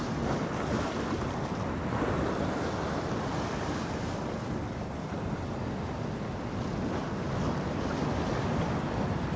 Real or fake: real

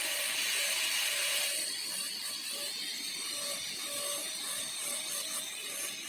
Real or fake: real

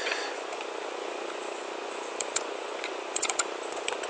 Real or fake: fake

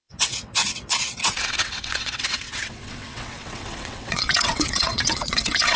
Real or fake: fake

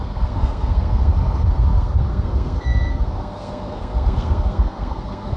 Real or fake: fake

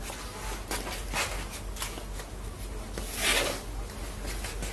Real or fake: real